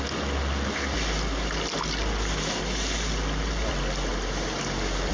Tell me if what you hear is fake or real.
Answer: real